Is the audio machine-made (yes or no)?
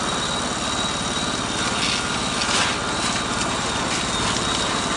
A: no